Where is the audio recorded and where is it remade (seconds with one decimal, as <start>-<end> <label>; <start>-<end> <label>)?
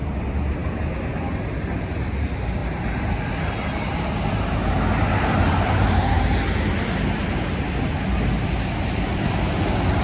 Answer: 0.0-10.0 recorded